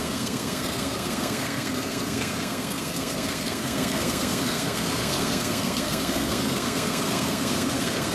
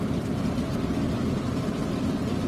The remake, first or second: first